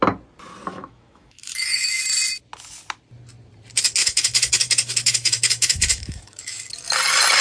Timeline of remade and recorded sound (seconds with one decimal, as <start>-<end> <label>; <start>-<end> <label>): 0.0-0.7 recorded; 0.7-2.0 remade; 2.0-4.0 recorded; 4.0-6.6 remade; 6.6-7.4 recorded

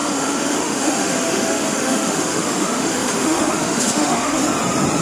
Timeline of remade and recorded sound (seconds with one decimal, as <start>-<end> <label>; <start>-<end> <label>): 0.0-4.4 remade; 4.4-5.0 recorded

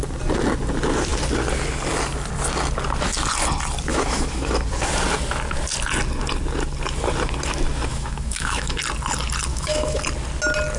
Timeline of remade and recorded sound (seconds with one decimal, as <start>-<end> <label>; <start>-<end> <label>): 0.0-3.9 recorded; 3.9-4.5 remade; 4.5-7.9 recorded; 7.9-8.8 remade; 8.8-9.5 recorded; 9.5-10.0 remade; 10.0-10.8 recorded

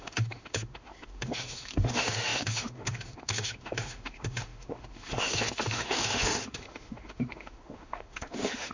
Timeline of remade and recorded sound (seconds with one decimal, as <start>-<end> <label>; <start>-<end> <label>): 0.0-8.7 remade

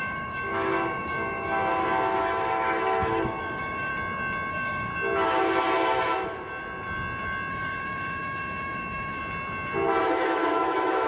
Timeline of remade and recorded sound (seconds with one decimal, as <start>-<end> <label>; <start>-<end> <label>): 0.0-1.7 remade; 1.7-2.2 recorded; 2.2-3.9 remade; 3.9-4.5 recorded; 4.5-4.9 remade; 4.9-7.5 recorded; 7.5-9.2 remade; 9.2-10.0 recorded; 10.0-11.1 remade

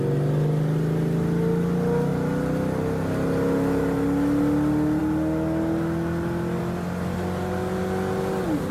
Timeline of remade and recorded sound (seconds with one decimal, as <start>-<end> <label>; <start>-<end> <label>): 0.0-8.7 recorded

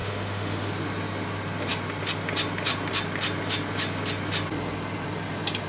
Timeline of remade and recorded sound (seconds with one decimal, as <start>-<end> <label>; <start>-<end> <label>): 0.0-0.7 remade; 0.7-5.7 recorded